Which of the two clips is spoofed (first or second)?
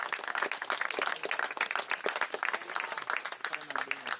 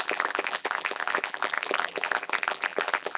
second